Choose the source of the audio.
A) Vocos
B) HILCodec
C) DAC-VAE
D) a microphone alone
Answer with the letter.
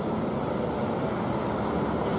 D